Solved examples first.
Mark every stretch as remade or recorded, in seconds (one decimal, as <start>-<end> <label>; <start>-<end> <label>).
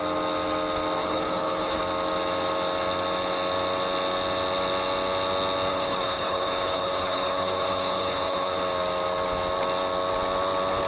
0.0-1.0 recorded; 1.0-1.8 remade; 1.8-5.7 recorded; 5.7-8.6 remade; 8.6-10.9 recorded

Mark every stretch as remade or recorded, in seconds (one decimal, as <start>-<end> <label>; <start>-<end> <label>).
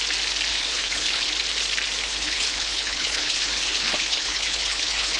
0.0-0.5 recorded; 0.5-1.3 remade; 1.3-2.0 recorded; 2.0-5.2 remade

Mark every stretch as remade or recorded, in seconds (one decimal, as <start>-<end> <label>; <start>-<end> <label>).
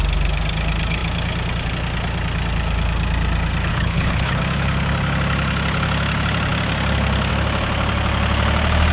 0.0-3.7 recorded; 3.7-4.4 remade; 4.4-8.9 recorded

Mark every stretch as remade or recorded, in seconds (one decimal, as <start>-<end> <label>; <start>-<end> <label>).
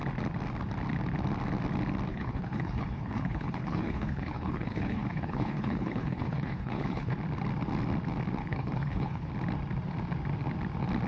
0.0-2.1 recorded; 2.1-7.1 remade; 7.1-8.4 recorded; 8.4-9.3 remade; 9.3-11.1 recorded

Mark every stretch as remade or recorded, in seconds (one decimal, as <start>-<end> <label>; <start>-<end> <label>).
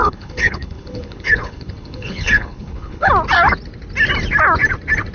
0.0-3.1 remade; 3.1-5.1 recorded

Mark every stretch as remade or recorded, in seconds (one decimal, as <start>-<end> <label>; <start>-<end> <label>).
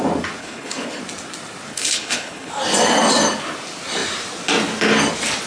0.0-0.4 recorded; 0.4-1.0 remade; 1.0-1.7 recorded; 1.7-2.5 remade; 2.5-5.5 recorded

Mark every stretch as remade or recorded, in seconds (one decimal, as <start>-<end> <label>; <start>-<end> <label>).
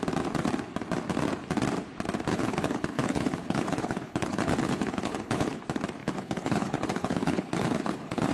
0.0-2.3 recorded; 2.3-5.6 remade; 5.6-6.0 recorded; 6.0-8.3 remade